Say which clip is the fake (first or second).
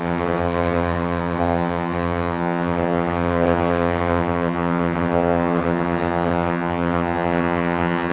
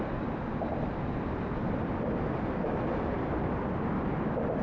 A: first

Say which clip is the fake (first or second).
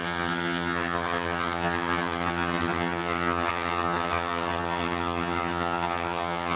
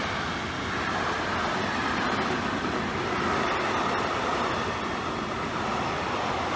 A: first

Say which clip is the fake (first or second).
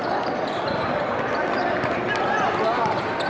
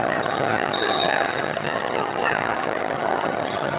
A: second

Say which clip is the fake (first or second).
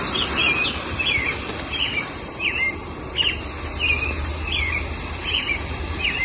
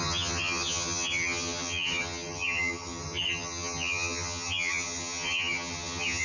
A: second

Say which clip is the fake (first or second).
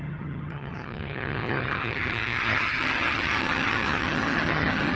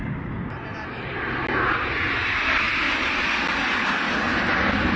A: first